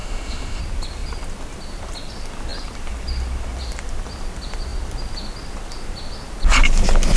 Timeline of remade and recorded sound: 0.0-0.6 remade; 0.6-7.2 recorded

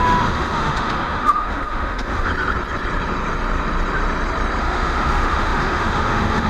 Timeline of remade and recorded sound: 0.0-2.3 remade; 2.3-4.6 recorded; 4.6-6.5 remade

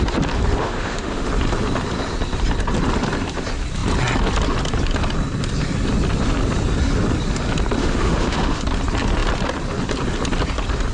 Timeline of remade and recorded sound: 0.0-0.6 recorded; 0.6-1.3 remade; 1.3-7.8 recorded; 7.8-8.6 remade; 8.6-10.9 recorded

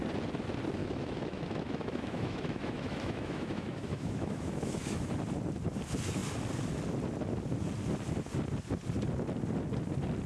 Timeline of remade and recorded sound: 0.0-0.8 recorded; 0.8-5.1 remade; 5.1-10.3 recorded